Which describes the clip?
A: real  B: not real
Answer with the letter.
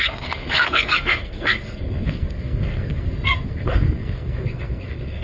B